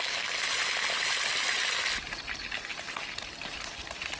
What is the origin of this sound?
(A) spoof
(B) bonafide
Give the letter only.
B